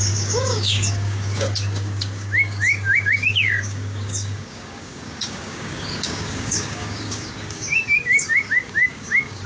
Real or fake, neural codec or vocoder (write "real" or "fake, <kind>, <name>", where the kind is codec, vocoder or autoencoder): fake, codec, DAC